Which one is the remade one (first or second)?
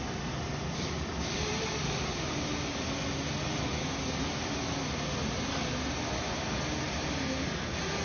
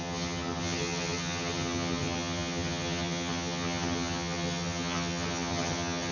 second